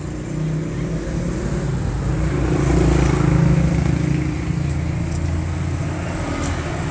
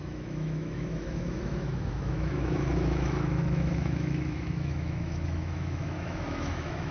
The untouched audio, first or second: first